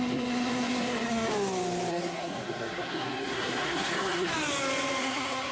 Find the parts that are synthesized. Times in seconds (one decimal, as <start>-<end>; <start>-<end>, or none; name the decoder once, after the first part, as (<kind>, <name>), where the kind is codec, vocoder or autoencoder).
0.0-1.3 (codec, SNAC); 1.9-4.3; 5.0-5.5